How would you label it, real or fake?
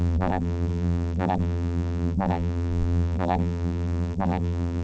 fake